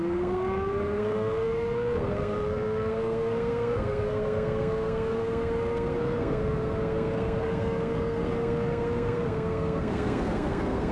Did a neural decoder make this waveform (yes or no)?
yes